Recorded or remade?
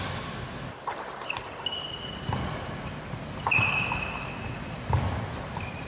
recorded